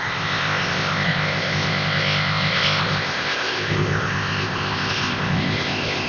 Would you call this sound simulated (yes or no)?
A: yes